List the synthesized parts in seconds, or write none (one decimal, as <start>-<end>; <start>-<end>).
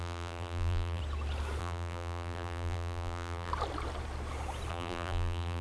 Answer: 0.0-1.0; 1.6-3.5; 4.7-5.6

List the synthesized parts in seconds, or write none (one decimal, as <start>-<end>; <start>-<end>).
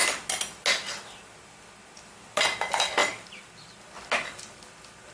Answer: none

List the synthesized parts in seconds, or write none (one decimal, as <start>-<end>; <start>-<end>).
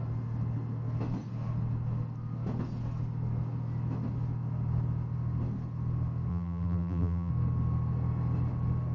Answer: 6.3-7.3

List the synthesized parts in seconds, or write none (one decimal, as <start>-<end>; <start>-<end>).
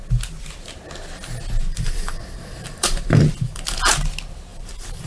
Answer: 1.6-3.9; 4.5-5.1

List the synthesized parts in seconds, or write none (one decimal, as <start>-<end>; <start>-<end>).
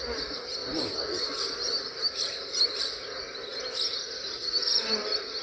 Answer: 0.6-1.7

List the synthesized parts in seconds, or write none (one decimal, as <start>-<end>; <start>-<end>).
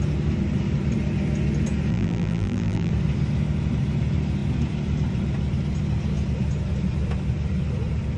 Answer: 1.9-2.9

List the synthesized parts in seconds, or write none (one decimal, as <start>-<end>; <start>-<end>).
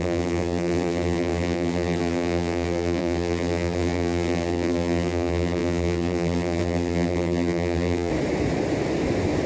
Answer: 0.0-8.1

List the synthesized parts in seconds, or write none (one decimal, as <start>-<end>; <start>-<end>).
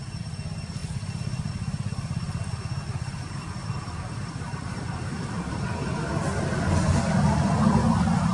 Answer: 3.6-5.6